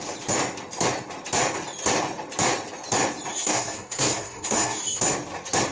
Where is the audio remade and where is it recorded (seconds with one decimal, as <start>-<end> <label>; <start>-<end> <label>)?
0.0-3.3 recorded; 3.3-5.0 remade; 5.0-5.7 recorded